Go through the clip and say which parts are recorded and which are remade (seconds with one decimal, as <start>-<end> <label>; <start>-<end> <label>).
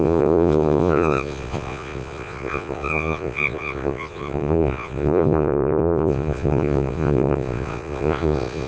0.0-8.7 remade